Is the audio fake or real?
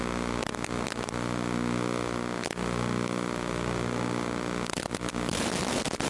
real